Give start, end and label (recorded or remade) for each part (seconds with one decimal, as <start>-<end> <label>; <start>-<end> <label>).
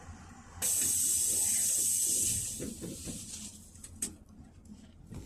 0.0-5.3 recorded